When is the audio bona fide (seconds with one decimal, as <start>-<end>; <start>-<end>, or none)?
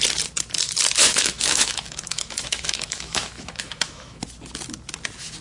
0.0-1.0; 4.2-5.4